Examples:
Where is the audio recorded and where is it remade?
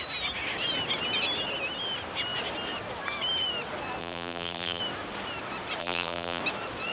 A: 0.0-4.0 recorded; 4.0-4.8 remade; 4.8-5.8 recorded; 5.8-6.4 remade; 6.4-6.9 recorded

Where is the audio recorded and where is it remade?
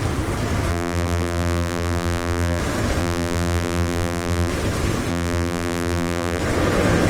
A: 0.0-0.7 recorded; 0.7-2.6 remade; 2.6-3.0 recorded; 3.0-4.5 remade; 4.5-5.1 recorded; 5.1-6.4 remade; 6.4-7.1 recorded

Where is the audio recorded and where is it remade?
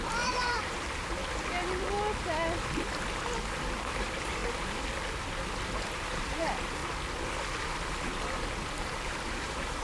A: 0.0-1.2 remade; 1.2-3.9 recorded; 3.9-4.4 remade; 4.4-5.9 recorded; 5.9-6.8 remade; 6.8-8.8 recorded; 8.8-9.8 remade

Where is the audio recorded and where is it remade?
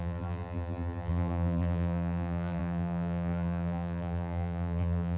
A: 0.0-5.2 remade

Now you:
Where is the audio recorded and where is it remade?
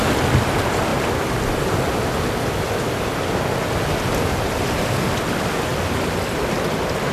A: 0.0-5.7 recorded; 5.7-6.4 remade; 6.4-7.1 recorded